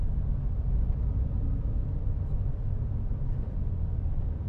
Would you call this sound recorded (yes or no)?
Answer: yes